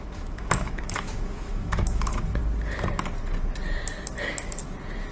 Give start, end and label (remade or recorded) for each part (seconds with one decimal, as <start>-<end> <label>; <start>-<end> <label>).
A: 0.0-2.4 remade; 2.4-5.1 recorded